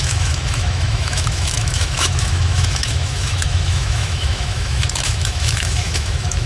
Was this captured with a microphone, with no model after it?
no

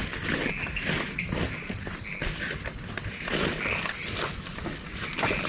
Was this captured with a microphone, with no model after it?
yes